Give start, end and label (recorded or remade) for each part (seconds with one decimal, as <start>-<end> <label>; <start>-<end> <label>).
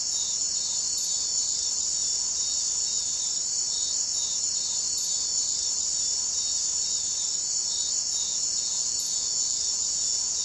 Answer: 0.0-8.3 recorded; 8.3-10.4 remade